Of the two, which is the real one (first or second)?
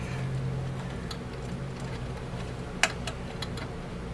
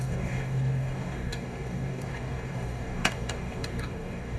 first